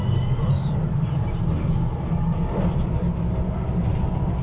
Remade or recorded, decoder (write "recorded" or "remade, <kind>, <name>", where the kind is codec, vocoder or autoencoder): recorded